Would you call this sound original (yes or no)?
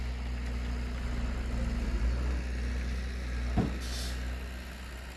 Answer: yes